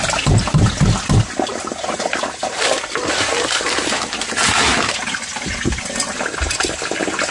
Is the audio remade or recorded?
recorded